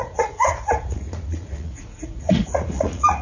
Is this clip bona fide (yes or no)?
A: no